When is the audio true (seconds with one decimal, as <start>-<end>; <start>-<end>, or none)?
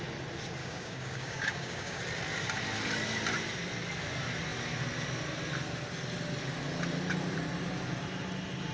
0.0-0.6; 2.0-8.7